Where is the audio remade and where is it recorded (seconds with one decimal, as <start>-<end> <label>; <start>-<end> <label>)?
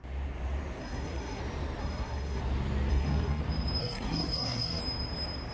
0.0-0.8 recorded; 0.8-1.4 remade; 1.4-1.8 recorded; 1.8-2.4 remade; 2.4-2.9 recorded; 2.9-3.4 remade; 3.4-3.8 recorded; 3.8-4.8 remade; 4.8-5.5 recorded